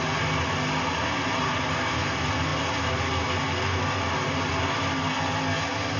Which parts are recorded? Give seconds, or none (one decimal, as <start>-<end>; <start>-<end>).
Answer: 0.0-6.0

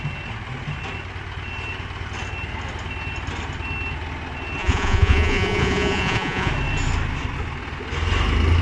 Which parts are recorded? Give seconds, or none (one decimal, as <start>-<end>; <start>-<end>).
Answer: 0.0-4.6; 6.5-8.6

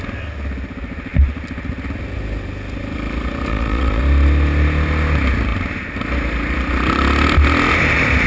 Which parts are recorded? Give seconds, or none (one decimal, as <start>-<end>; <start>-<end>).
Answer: 0.0-3.5; 4.0-8.3